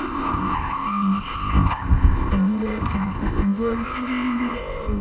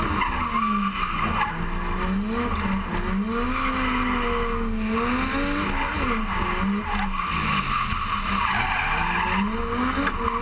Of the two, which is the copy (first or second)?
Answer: first